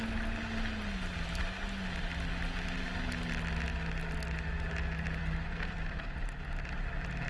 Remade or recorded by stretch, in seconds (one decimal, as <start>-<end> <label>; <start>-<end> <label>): 0.0-5.2 recorded; 5.2-5.8 remade; 5.8-7.3 recorded